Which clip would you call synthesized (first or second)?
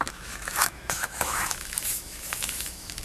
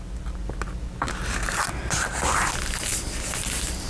first